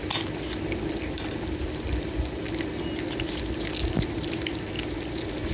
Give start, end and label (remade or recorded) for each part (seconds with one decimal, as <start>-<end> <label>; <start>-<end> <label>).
0.0-5.5 recorded

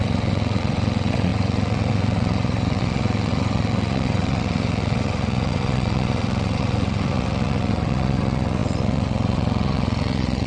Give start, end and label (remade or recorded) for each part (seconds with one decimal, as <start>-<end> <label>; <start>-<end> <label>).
0.0-10.5 remade

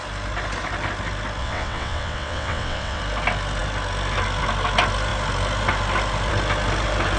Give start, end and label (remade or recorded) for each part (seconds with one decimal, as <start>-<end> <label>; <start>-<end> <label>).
0.0-1.4 recorded; 1.4-3.0 remade; 3.0-7.2 recorded

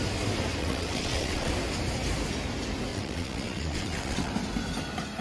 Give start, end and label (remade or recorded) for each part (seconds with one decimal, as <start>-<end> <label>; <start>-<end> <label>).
0.0-0.6 recorded; 0.6-1.5 remade; 1.5-2.9 recorded; 2.9-4.3 remade; 4.3-5.2 recorded

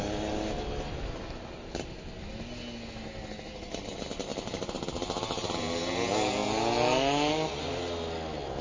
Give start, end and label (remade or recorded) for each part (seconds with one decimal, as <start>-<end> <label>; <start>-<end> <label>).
0.0-8.6 recorded

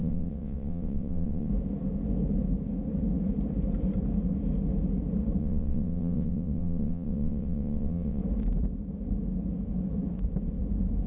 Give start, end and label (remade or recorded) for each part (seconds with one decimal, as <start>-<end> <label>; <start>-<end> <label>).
0.0-1.5 remade; 1.5-5.4 recorded; 5.4-8.2 remade; 8.2-11.1 recorded